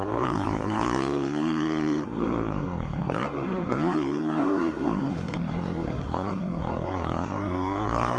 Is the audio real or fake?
fake